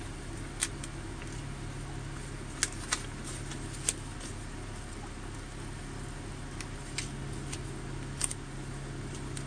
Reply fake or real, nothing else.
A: real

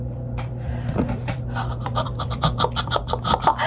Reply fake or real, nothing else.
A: fake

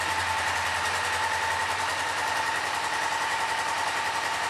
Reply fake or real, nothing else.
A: fake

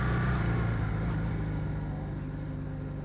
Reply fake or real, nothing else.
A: real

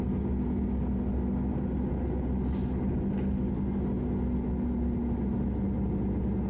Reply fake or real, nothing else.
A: real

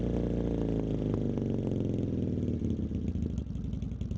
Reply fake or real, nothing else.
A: real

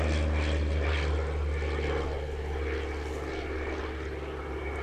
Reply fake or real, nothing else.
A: real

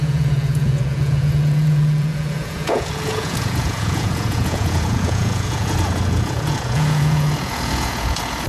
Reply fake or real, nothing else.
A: fake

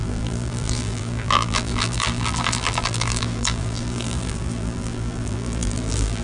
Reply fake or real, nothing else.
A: fake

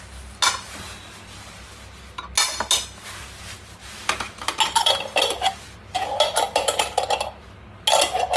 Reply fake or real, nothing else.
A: real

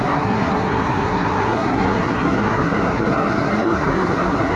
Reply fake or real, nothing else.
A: fake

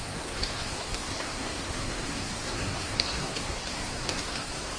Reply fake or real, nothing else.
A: fake